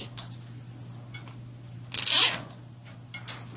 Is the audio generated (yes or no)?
no